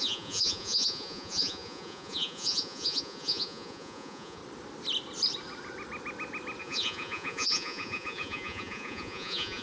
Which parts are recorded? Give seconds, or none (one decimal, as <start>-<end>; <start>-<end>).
4.4-6.6